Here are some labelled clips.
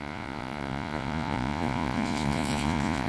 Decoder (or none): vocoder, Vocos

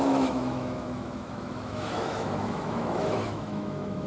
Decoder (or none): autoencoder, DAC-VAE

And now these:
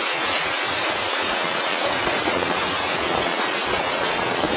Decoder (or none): vocoder, Vocos